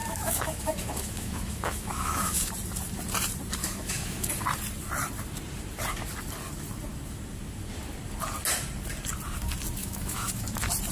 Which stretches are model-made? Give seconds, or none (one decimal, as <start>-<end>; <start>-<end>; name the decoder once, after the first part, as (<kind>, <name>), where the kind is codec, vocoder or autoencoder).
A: 0.0-2.5 (autoencoder, DAC-VAE); 3.6-4.3; 9.8-10.4